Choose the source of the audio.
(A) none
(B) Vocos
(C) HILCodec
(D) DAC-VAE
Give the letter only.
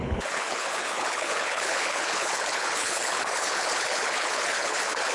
C